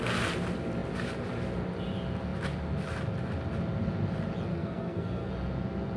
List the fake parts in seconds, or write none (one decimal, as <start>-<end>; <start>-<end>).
4.5-5.3